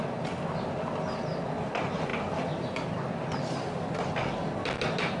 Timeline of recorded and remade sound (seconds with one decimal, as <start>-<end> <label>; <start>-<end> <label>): 0.0-5.2 recorded